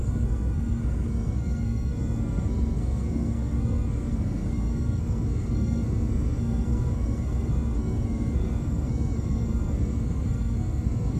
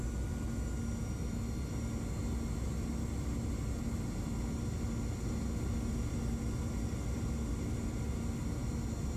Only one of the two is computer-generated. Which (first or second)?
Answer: first